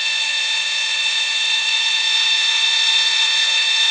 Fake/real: fake